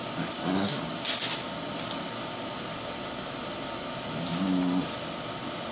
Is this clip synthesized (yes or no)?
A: no